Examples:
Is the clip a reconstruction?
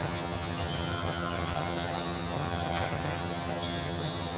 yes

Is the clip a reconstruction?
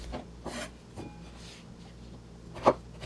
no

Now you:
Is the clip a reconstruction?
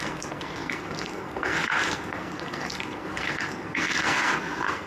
yes